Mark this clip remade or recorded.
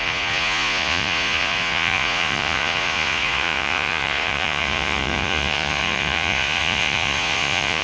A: remade